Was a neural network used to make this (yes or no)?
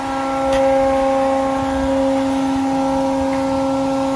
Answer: no